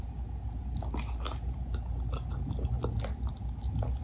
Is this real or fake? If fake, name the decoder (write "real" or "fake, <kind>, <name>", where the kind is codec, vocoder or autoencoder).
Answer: real